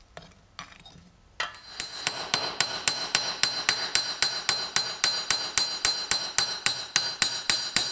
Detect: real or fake real